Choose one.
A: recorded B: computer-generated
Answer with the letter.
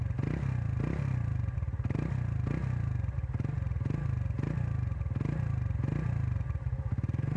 A